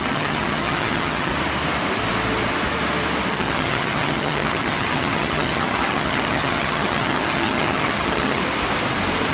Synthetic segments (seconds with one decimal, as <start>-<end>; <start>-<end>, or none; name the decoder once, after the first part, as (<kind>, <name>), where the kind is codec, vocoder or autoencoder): 0.0-1.3 (vocoder, HiFi-GAN); 3.3-8.4